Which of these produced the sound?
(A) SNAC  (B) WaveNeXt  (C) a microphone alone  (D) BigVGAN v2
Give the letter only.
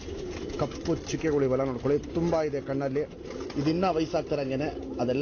C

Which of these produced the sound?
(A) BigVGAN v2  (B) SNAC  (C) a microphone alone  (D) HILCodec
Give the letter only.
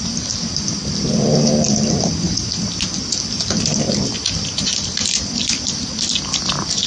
C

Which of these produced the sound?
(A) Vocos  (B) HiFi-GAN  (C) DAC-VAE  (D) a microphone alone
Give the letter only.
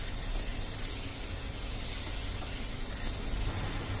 D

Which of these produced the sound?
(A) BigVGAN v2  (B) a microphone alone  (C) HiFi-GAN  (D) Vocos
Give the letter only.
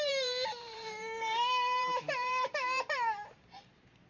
A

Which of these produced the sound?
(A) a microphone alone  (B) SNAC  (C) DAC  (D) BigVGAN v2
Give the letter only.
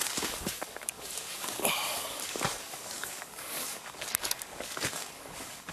C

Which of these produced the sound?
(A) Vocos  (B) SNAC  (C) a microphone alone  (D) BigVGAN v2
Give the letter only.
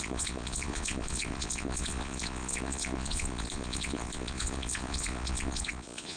A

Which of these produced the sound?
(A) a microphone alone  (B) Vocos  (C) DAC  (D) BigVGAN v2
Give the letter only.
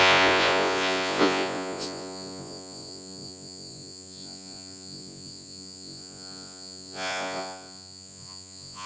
B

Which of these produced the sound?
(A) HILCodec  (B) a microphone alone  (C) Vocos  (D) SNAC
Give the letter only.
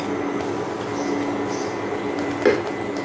B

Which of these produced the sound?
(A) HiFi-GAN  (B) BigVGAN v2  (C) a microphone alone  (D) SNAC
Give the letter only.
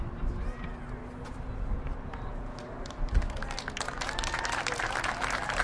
C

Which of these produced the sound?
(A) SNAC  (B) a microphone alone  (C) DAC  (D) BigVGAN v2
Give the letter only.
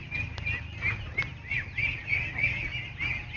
B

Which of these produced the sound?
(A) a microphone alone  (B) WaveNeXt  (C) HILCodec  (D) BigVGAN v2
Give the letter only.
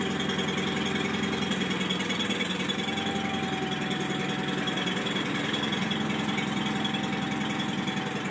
A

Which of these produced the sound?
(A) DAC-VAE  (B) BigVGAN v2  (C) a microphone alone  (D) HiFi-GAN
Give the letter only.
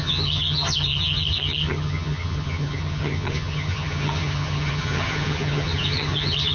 D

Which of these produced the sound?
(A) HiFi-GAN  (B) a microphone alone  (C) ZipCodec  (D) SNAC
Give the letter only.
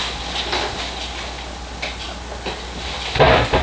B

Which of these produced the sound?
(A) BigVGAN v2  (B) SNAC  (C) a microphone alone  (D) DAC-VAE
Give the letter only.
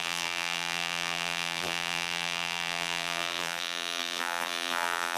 A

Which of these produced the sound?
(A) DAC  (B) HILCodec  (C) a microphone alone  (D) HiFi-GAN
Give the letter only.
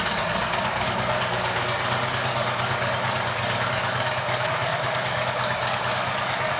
A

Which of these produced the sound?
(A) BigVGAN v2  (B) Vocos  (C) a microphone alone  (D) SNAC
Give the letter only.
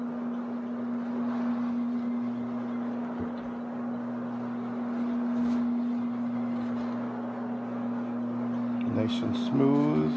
C